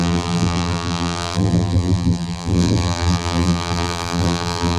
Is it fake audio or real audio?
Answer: fake